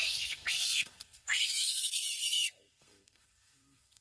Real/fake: fake